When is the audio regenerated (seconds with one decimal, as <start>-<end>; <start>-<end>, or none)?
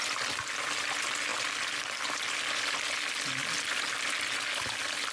none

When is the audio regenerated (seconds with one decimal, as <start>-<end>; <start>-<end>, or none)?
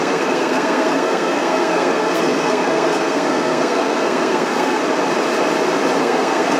0.0-4.8; 6.0-6.6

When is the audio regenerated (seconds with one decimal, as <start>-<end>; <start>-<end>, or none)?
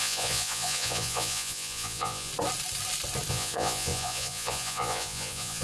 0.0-2.3; 3.3-5.6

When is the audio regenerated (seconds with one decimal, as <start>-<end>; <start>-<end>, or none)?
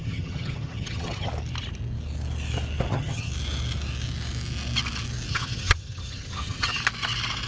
0.0-1.3; 2.9-3.3; 5.3-6.7